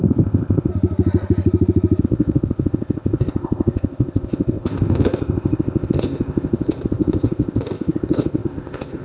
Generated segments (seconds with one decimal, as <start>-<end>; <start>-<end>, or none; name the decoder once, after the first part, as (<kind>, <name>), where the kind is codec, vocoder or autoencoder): 0.0-0.7 (codec, ZipCodec); 2.0-9.0